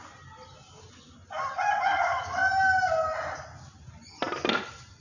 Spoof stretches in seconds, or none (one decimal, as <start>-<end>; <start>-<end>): none